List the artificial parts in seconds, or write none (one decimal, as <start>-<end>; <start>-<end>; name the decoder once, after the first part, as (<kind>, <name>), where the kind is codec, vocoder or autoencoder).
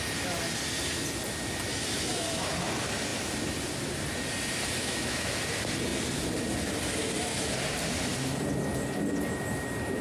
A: 4.8-5.3 (autoencoder, DAC-VAE)